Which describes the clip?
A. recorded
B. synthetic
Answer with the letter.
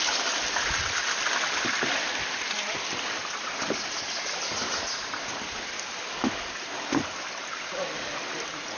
A